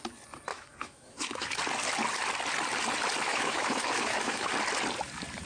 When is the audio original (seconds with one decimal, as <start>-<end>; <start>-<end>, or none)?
0.0-0.5; 1.6-3.3; 4.5-5.5